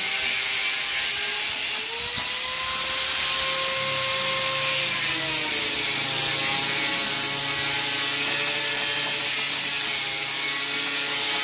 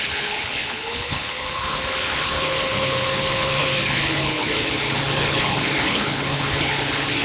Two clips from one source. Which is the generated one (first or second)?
second